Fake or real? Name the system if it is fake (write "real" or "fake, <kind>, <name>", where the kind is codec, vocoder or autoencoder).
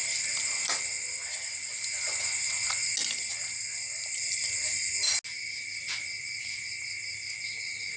real